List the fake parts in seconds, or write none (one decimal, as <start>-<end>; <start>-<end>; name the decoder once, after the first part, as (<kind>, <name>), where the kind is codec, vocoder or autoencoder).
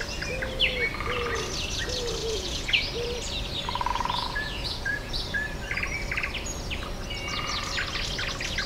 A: 2.2-2.8 (vocoder, Vocos); 3.9-5.1